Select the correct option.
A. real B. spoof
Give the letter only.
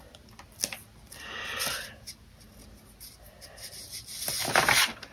A